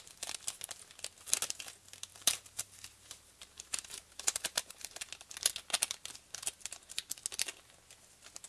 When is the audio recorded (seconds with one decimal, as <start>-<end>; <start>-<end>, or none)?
0.0-2.1; 5.0-8.5